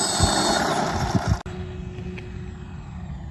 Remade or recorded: recorded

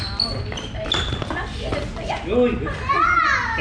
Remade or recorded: recorded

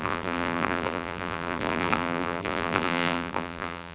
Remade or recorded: remade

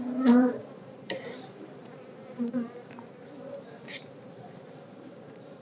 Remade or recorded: remade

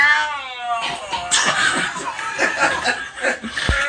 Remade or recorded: recorded